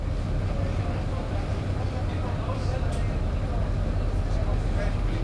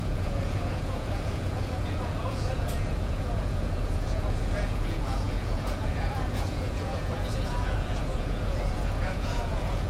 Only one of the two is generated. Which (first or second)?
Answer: second